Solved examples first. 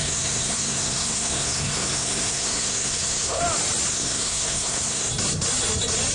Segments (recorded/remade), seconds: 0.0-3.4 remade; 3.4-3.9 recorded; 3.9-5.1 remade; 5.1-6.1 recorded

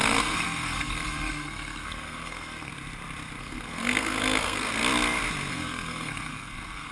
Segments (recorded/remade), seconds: 0.0-2.7 remade; 2.7-3.4 recorded; 3.4-4.8 remade; 4.8-5.5 recorded; 5.5-6.9 remade

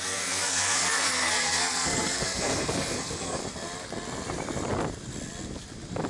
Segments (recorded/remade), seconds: 0.0-3.4 remade; 3.4-6.1 recorded

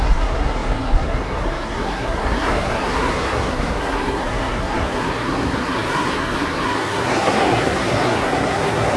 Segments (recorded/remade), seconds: 0.0-9.0 remade

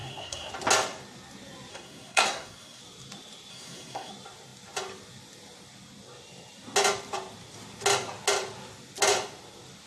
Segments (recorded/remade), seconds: 0.0-0.5 remade; 0.5-1.7 recorded; 1.7-2.8 remade; 2.8-3.5 recorded; 3.5-4.1 remade; 4.1-9.9 recorded